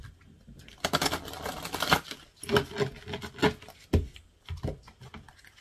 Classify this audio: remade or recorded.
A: recorded